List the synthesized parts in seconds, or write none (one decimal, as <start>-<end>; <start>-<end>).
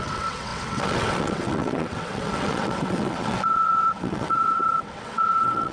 0.0-5.7